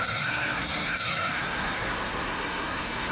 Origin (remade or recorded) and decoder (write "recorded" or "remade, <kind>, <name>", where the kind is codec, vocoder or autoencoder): remade, codec, SNAC